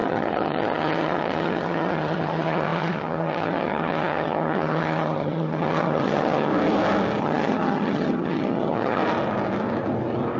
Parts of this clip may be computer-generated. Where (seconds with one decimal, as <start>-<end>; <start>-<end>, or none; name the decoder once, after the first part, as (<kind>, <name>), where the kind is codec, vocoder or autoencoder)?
0.0-6.5 (vocoder, HiFi-GAN); 7.2-9.0